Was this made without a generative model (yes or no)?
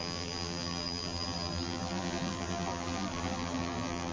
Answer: no